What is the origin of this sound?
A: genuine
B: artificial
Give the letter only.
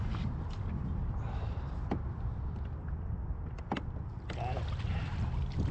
A